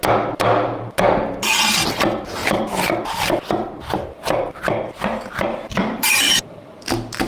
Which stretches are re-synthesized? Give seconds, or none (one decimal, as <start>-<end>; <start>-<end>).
2.4-6.8